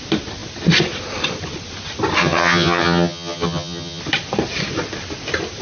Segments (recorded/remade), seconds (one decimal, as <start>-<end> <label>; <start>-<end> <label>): 0.0-2.2 recorded; 2.2-4.0 remade; 4.0-5.6 recorded